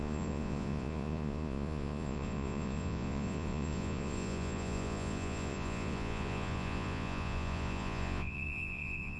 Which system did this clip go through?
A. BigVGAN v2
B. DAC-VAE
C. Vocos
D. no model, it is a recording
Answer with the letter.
C